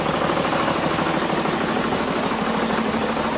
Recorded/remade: recorded